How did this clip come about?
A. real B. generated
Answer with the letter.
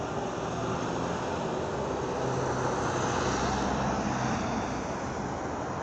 A